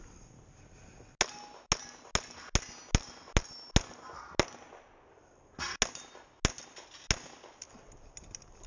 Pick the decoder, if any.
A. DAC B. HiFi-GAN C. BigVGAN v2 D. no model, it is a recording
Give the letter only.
D